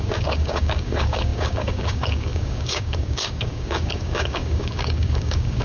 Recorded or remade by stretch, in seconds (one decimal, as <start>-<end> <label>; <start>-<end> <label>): 0.0-5.6 remade

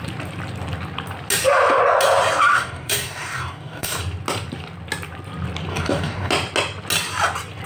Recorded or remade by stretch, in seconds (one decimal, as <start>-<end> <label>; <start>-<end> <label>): 0.0-2.5 recorded; 2.5-4.0 remade; 4.0-5.7 recorded; 5.7-6.3 remade; 6.3-7.7 recorded

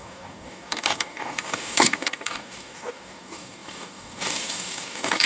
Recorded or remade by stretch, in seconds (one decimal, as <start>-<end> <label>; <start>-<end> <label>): 0.0-5.3 remade